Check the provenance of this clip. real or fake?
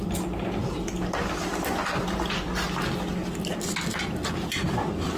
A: real